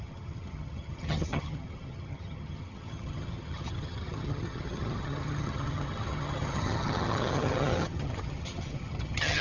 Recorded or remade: remade